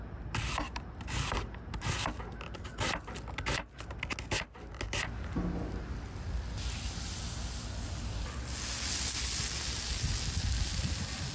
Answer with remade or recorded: recorded